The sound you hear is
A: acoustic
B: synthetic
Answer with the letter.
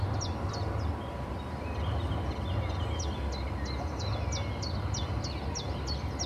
A